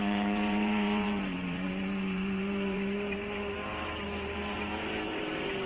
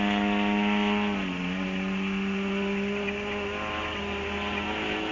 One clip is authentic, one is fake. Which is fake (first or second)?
first